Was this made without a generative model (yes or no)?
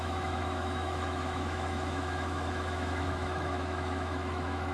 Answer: no